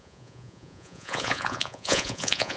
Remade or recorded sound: remade